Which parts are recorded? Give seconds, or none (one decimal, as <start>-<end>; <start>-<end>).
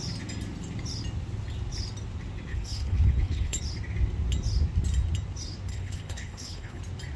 0.0-2.5; 3.6-5.7; 6.8-7.2